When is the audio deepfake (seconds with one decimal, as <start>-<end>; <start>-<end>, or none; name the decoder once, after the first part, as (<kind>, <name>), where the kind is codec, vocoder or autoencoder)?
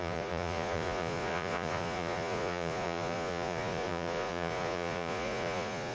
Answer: 0.0-5.9 (vocoder, Vocos)